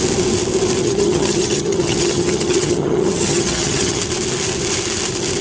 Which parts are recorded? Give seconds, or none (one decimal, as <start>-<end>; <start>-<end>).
0.0-0.8; 4.0-5.4